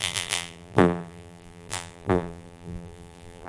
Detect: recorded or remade remade